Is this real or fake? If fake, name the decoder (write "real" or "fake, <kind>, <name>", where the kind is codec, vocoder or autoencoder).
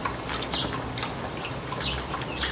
real